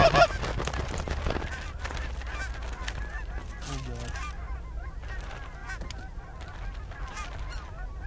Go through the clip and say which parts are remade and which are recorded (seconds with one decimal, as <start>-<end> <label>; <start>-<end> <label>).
0.0-8.1 recorded